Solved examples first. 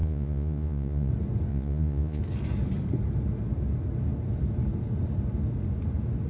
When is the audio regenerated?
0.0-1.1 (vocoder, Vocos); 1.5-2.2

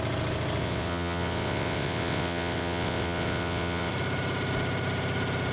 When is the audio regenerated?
0.6-3.9 (vocoder, WaveNeXt)

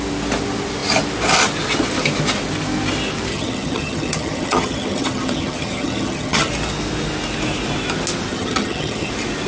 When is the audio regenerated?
3.3-6.5 (vocoder, HiFi-GAN); 8.3-9.1

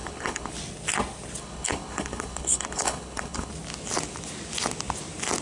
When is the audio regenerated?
0.0-0.5 (codec, HILCodec); 1.4-3.5